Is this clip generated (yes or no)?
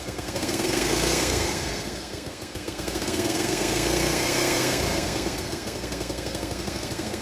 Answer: yes